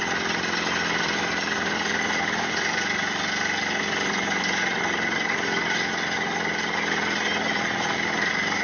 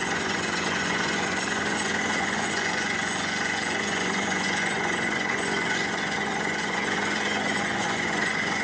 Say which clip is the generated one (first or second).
second